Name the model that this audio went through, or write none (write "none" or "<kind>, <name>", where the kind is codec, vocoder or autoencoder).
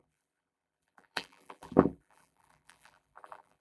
vocoder, BigVGAN v2